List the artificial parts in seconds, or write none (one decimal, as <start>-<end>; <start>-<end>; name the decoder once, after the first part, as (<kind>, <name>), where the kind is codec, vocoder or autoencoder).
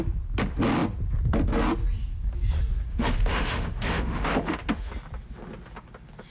2.9-4.9 (autoencoder, DAC-VAE)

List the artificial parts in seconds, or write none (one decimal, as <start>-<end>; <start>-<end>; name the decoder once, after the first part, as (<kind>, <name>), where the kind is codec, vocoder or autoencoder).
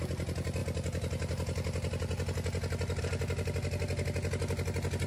none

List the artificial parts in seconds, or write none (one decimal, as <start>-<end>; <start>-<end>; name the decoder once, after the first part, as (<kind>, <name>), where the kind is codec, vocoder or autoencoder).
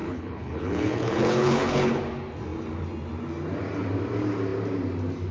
0.0-2.0 (codec, HILCodec)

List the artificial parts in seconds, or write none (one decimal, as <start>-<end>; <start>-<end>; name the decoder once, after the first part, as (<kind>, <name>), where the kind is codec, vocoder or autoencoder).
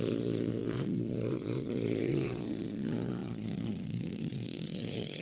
0.0-5.2 (vocoder, Vocos)